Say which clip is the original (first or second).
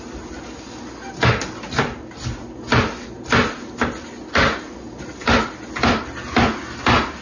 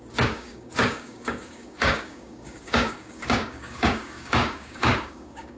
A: first